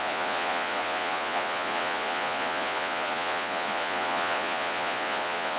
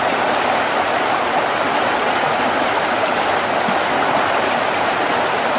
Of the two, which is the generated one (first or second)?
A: first